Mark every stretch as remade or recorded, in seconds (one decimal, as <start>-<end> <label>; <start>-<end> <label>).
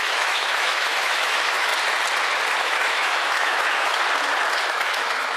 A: 0.0-1.7 remade; 1.7-2.6 recorded; 2.6-4.0 remade; 4.0-4.6 recorded; 4.6-5.4 remade